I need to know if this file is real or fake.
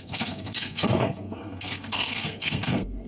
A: fake